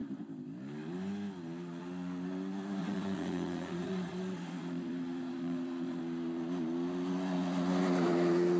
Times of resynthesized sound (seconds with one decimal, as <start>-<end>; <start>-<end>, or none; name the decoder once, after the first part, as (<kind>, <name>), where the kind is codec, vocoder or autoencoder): 2.8-6.0 (vocoder, Vocos)